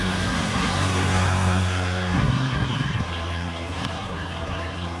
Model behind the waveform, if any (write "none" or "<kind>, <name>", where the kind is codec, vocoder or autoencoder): codec, SNAC